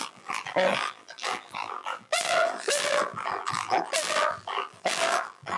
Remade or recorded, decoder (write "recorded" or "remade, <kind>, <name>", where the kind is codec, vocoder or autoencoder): remade, vocoder, BigVGAN v2